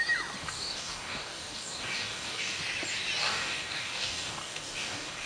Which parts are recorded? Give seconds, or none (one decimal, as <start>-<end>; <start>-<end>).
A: 0.0-0.4; 2.6-3.2